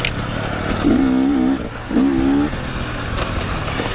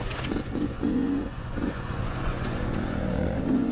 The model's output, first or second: second